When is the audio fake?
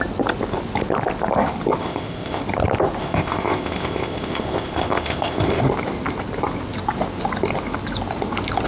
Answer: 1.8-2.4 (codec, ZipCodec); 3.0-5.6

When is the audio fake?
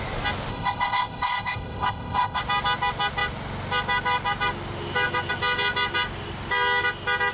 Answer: 0.5-2.4 (codec, ZipCodec)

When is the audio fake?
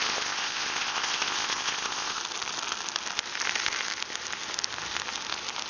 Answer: 0.0-2.2 (codec, ZipCodec)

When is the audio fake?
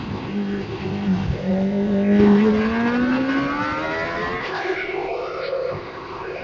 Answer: 0.0-2.5 (codec, ZipCodec); 4.4-6.4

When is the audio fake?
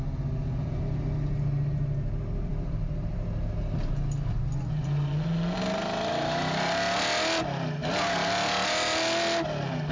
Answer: none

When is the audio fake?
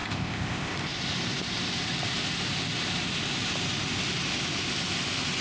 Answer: 0.0-0.7 (codec, ZipCodec)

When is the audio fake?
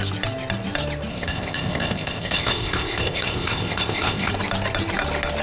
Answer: 1.1-4.3 (codec, ZipCodec)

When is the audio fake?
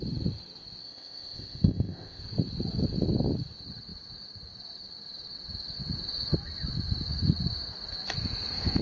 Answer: 0.8-2.2 (codec, ZipCodec)